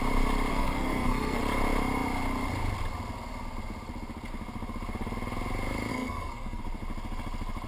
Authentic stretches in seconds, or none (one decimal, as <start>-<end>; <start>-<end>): 0.0-0.5; 1.4-5.9; 6.6-7.7